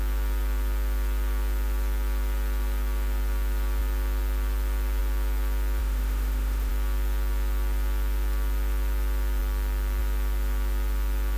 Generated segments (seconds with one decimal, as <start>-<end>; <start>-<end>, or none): 5.8-6.7